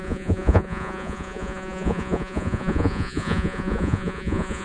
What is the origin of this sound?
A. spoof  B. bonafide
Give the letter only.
A